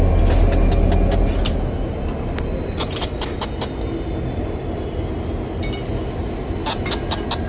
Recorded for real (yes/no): yes